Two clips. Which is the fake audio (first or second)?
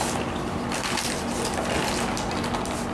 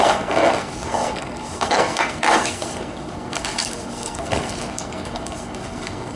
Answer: second